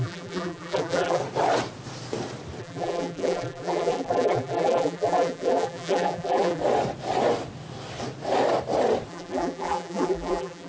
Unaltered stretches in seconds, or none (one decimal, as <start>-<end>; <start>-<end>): 1.2-2.6; 6.6-9.1